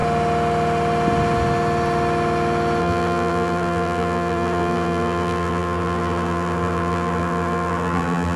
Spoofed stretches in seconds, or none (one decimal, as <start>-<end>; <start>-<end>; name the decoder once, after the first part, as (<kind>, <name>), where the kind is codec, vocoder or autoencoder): 2.8-8.4 (vocoder, BigVGAN v2)